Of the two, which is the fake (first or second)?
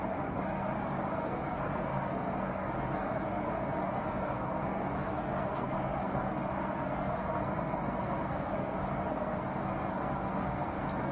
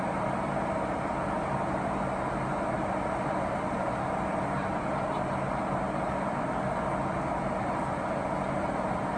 first